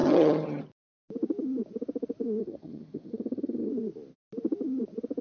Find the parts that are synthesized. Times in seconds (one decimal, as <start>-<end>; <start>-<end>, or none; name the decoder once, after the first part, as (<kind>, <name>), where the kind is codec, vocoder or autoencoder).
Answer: 0.0-0.6 (vocoder, HiFi-GAN); 2.4-3.7